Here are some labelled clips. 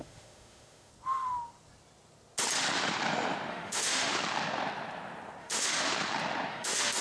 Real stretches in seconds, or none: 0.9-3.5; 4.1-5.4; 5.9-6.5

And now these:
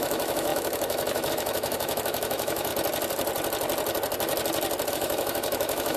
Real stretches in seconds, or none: 2.7-4.9

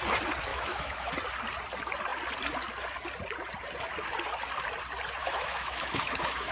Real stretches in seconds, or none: 0.0-0.5; 1.1-5.2

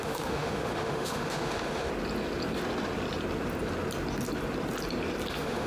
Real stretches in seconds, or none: 1.9-5.3

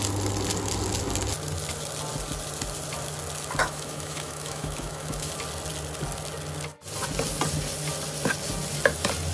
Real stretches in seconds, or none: 0.0-3.6; 5.3-9.3

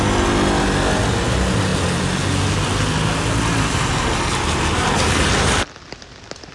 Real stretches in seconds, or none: 0.0-6.5

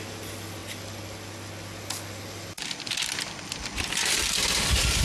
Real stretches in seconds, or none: 0.0-5.0

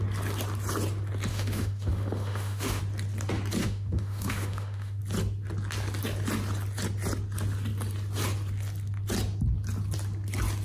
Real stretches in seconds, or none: 0.0-1.3; 2.8-3.6; 5.0-10.6